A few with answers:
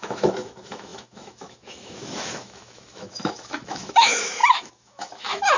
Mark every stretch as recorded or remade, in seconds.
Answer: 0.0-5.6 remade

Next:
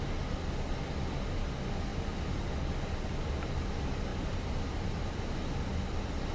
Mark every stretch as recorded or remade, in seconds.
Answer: 0.0-6.3 recorded

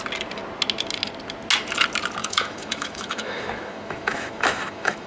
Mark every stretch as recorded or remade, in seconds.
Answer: 0.0-2.2 recorded; 2.2-5.1 remade

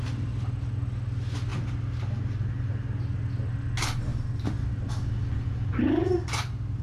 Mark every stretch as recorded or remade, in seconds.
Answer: 0.0-6.8 recorded